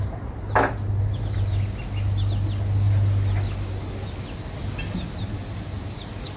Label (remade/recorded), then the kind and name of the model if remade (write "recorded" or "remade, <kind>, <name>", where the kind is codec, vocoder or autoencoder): recorded